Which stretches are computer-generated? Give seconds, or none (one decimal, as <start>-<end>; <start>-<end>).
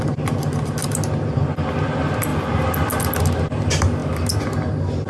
none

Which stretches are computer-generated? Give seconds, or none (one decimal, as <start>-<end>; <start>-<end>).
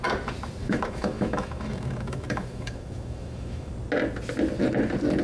0.6-3.7